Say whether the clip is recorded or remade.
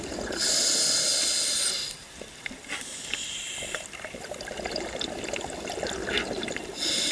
recorded